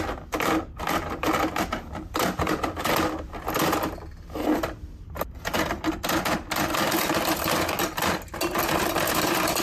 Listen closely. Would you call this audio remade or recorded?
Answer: recorded